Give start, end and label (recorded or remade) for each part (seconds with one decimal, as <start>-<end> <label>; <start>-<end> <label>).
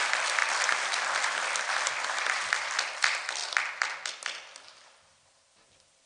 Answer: 0.0-3.4 remade; 3.4-4.1 recorded; 4.1-6.1 remade